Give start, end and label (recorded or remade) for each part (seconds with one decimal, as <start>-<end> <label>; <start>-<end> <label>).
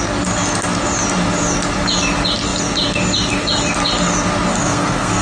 0.0-4.5 recorded; 4.5-5.2 remade